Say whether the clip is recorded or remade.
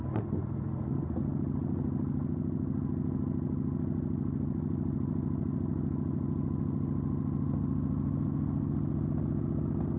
recorded